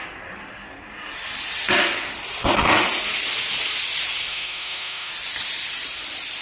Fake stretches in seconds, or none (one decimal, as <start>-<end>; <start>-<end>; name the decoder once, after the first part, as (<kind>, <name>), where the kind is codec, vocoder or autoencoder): 4.3-5.1 (autoencoder, DAC-VAE)